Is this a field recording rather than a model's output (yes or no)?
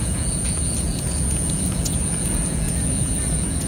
no